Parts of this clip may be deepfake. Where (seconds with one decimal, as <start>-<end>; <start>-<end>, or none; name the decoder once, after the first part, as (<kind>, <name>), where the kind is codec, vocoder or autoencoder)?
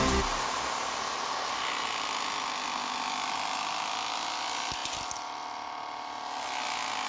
none